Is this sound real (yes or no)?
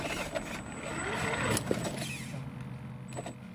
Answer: yes